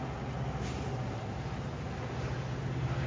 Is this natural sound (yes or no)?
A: yes